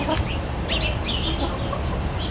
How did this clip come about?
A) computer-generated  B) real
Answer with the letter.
B